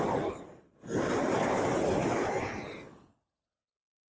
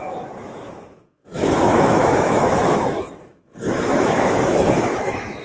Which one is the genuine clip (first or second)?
first